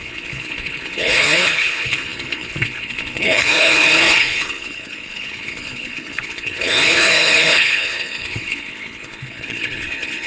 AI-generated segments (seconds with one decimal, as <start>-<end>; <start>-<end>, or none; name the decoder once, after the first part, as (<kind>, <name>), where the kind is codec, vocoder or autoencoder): 0.0-10.3 (codec, HILCodec)